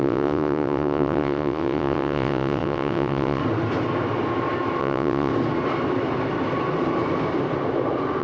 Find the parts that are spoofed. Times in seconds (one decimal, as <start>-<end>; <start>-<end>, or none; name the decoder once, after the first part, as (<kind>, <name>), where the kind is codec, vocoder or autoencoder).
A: 0.0-3.4 (vocoder, WaveNeXt); 4.8-5.3